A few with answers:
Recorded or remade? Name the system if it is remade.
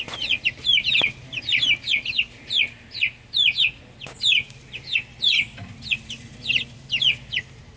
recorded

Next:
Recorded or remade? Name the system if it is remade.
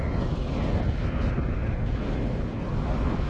recorded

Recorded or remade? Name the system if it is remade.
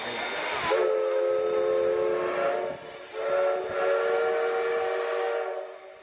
recorded